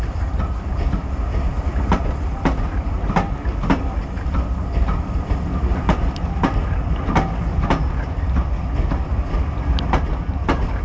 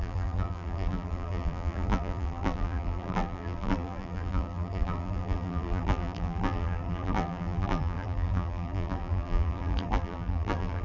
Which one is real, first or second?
first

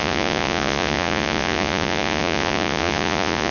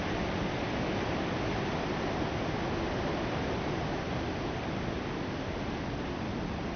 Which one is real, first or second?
second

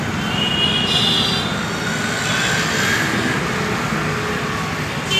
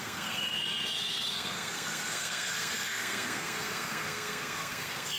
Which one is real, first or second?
first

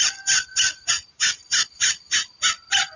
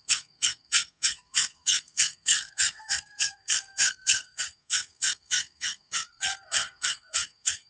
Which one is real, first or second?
first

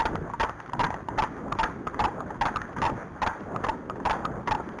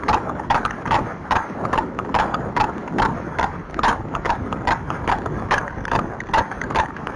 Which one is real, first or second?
first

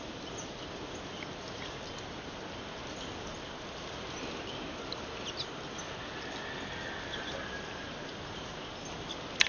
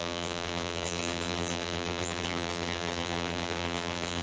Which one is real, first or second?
first